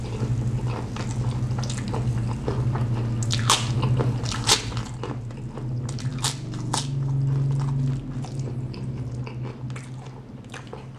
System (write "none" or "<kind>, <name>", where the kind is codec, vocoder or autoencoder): none